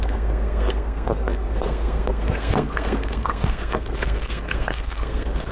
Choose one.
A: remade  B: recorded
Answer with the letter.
A